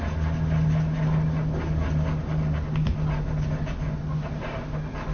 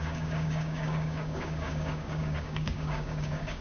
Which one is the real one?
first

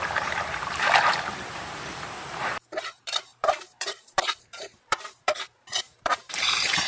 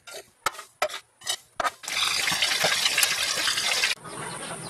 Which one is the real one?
second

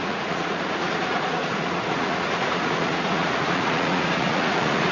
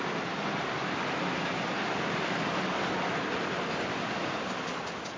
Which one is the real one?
second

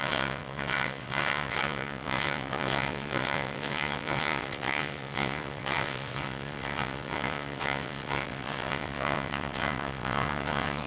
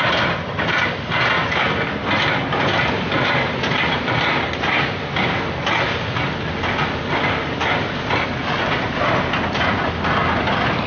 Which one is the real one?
second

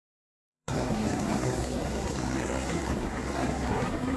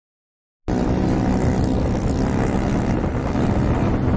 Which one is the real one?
second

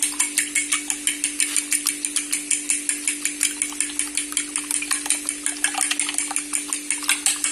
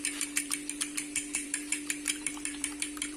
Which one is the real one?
first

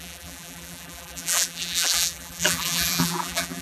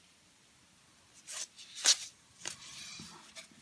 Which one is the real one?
second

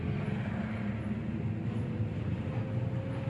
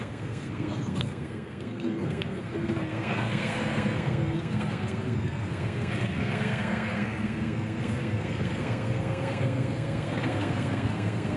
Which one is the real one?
first